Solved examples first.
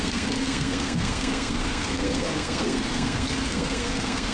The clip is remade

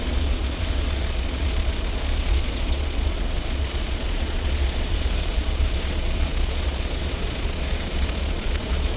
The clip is remade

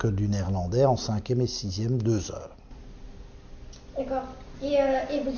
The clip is recorded